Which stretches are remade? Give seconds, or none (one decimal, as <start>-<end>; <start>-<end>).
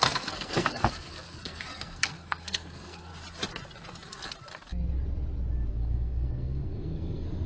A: 0.0-3.1; 5.7-7.5